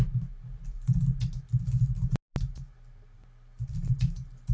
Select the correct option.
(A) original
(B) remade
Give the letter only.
A